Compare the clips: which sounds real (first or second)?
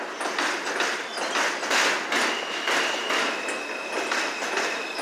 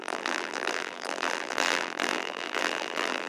first